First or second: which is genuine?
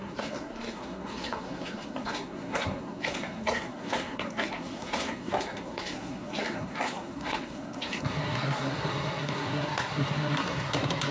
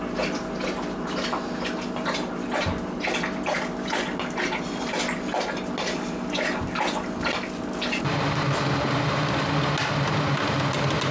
second